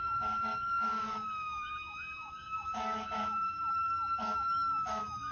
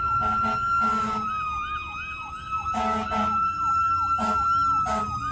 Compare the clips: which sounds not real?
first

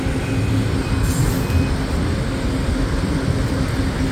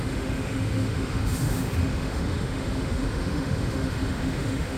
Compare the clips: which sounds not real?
second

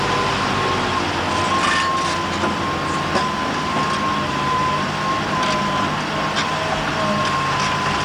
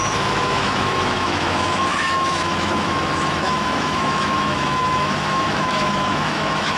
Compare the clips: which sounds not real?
second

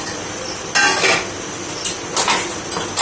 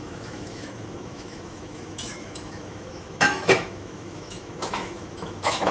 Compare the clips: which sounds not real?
second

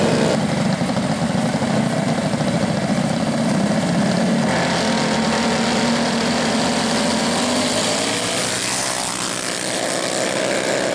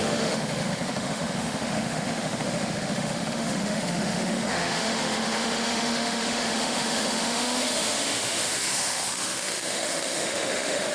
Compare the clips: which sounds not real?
second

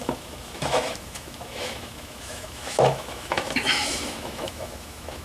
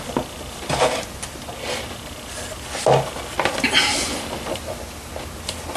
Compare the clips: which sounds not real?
first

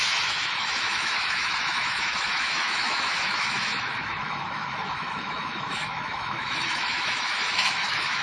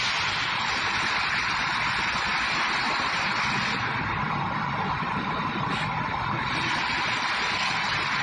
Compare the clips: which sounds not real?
first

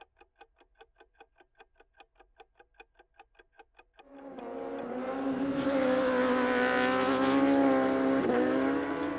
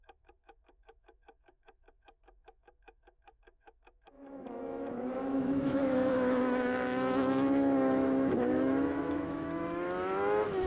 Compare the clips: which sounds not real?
second